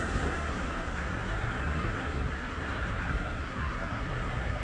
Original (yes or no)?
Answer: no